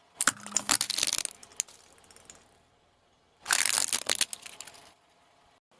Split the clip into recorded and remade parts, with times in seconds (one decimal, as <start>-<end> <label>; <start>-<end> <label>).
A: 0.0-5.8 recorded